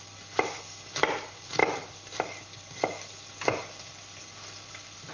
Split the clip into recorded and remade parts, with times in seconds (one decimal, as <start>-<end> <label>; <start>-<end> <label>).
0.0-5.1 recorded